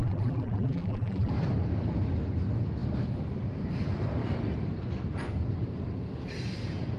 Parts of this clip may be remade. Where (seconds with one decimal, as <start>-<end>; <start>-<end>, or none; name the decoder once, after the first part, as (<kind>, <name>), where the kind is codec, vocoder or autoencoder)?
0.0-1.3 (vocoder, BigVGAN v2)